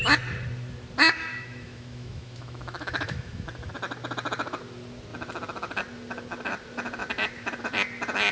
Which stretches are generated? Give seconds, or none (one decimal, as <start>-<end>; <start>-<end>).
1.3-3.7